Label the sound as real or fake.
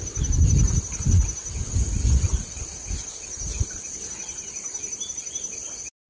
real